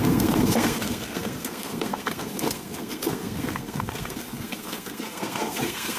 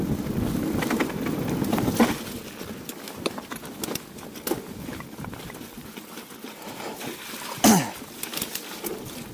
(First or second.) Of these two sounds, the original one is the second